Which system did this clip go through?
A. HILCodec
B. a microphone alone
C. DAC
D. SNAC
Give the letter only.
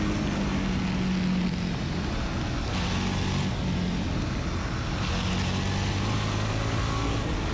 B